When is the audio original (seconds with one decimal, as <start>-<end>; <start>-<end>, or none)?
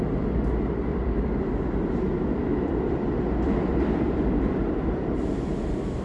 0.0-0.9; 1.5-2.4; 5.3-6.0